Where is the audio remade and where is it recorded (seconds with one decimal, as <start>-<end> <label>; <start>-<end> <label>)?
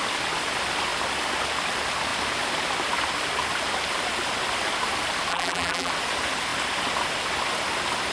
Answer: 0.0-5.3 recorded; 5.3-5.9 remade; 5.9-8.1 recorded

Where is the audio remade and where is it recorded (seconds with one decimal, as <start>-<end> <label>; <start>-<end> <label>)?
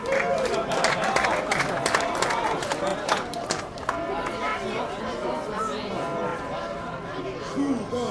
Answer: 0.0-2.9 recorded; 2.9-3.9 remade; 3.9-6.3 recorded; 6.3-7.2 remade; 7.2-8.1 recorded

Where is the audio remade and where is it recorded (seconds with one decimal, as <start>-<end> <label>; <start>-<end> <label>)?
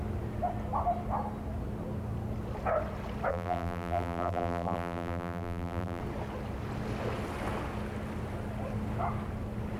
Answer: 0.0-3.3 recorded; 3.3-6.0 remade; 6.0-9.8 recorded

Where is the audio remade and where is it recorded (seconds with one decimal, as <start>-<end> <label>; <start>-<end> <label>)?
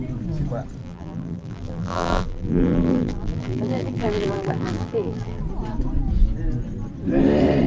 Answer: 0.0-0.8 recorded; 0.8-5.4 remade; 5.4-7.7 recorded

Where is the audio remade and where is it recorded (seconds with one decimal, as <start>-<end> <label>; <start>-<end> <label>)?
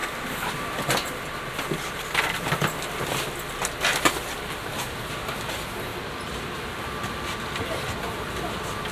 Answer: 0.0-4.7 remade; 4.7-5.9 recorded; 5.9-6.9 remade; 6.9-8.9 recorded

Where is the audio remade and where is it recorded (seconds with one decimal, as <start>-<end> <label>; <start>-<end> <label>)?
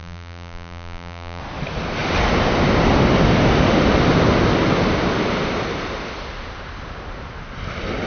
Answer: 0.0-1.4 remade; 1.4-8.1 recorded